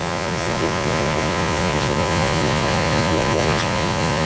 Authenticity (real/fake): fake